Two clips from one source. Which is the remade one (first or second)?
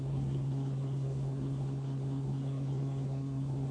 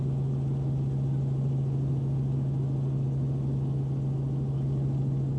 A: first